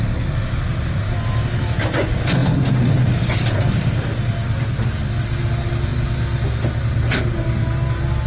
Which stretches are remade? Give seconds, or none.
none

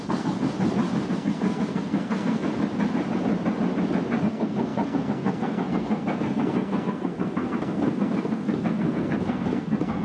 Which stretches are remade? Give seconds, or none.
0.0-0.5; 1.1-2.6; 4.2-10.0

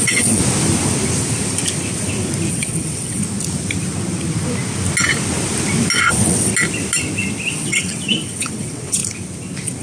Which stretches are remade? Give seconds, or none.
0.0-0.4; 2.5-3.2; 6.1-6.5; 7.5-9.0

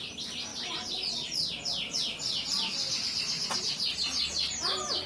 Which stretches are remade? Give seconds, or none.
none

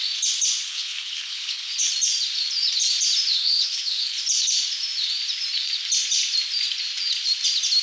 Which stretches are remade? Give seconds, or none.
0.7-1.9; 3.4-4.2

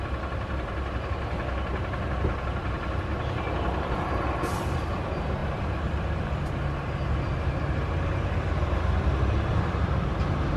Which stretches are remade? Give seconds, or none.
3.1-4.1

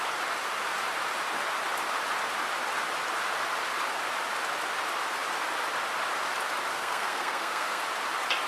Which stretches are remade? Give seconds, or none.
6.7-7.8

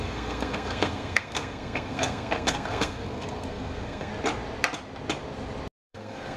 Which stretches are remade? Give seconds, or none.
0.0-4.1; 5.8-6.4